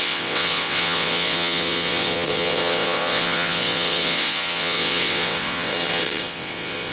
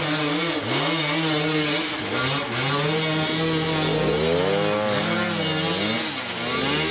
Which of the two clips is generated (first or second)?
first